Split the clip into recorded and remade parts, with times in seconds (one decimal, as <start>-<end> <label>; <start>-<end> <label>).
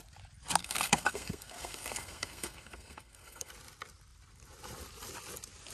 0.0-0.6 recorded; 0.6-3.5 remade; 3.5-5.7 recorded